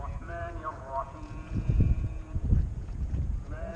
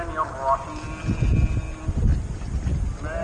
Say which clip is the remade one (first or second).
first